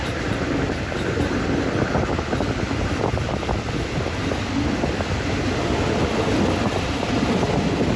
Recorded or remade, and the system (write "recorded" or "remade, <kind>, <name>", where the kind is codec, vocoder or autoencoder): recorded